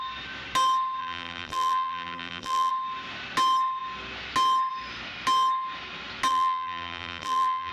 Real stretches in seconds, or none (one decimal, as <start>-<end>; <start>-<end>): 0.0-1.0; 2.7-6.3

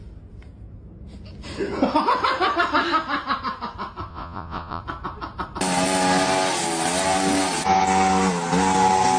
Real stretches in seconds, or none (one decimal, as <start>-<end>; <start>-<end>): 0.0-4.1; 4.8-9.2

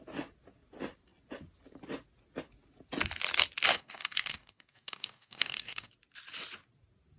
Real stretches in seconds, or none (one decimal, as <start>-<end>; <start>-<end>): 0.0-3.7; 5.9-7.2